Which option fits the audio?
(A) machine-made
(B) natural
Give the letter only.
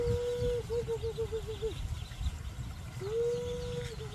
B